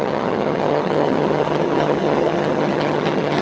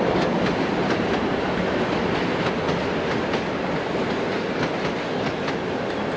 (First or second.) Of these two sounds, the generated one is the first